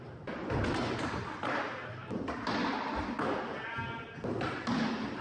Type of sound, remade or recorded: recorded